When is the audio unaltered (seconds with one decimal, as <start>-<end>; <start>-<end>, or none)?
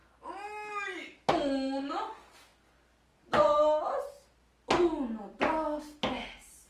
0.0-6.7